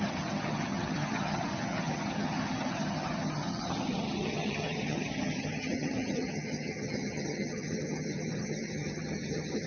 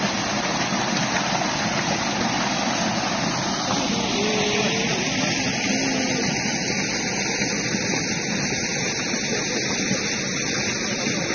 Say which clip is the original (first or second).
second